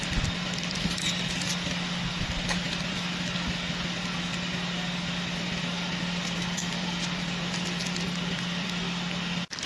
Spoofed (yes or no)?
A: no